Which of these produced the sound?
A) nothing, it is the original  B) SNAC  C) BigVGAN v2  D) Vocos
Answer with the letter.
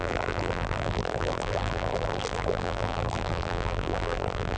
C